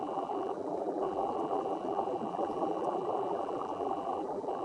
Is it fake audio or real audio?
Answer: fake